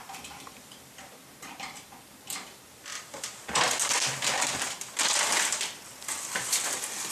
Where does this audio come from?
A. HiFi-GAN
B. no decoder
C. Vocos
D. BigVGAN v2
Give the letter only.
D